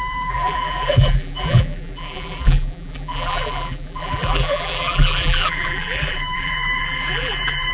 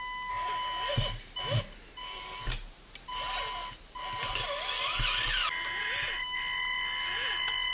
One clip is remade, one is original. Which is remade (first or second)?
first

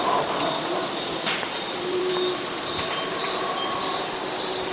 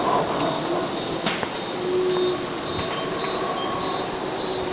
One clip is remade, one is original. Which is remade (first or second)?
first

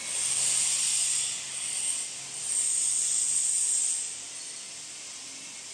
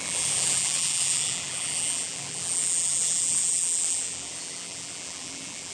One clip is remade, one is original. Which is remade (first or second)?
second